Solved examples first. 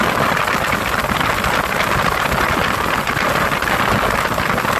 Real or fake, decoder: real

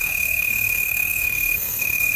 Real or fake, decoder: fake, codec, SNAC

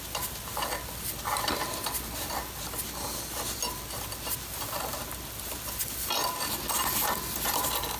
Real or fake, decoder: real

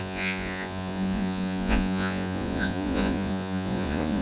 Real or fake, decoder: fake, vocoder, Vocos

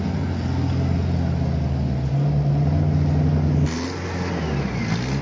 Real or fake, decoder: real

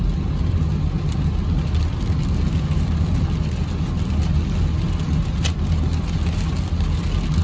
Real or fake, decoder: real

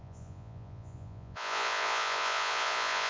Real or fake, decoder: fake, vocoder, Vocos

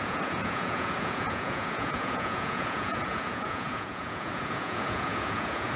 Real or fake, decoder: fake, vocoder, Vocos